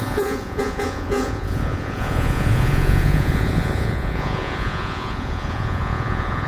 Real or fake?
fake